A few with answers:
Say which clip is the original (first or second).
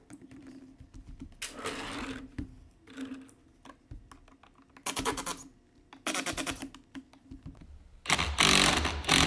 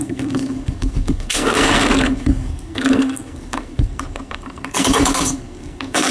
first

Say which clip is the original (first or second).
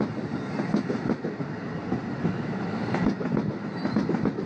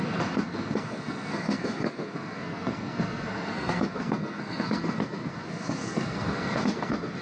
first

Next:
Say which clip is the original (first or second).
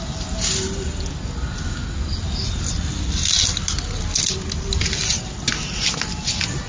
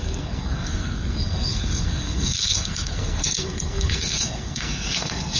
first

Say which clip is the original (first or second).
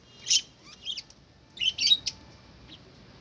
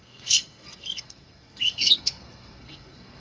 first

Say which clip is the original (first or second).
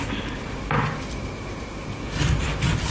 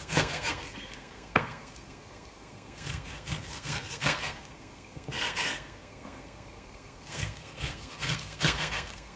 first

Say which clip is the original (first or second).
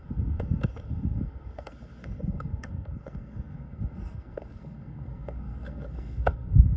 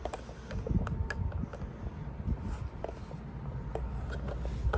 second